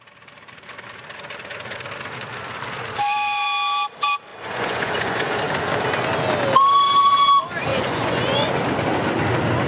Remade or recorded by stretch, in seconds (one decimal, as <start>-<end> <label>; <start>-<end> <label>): 0.0-4.3 recorded; 4.3-5.4 remade; 5.4-7.7 recorded; 7.7-8.5 remade; 8.5-9.7 recorded